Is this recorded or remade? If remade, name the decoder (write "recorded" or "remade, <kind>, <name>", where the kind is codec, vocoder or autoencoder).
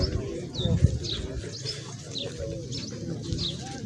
recorded